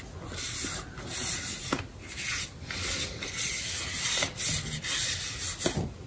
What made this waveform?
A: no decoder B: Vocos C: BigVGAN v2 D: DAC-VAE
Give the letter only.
A